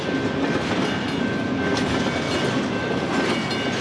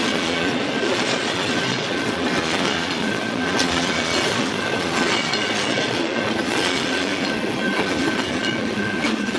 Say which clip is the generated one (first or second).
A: second